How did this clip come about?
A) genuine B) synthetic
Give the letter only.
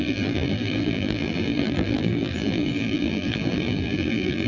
B